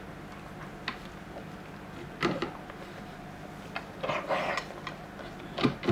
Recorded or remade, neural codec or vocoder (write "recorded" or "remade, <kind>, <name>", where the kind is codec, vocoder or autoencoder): recorded